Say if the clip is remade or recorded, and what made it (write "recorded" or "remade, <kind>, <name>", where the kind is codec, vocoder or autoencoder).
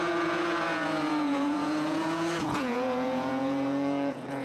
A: remade, vocoder, Vocos